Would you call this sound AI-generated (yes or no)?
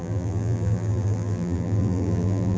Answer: yes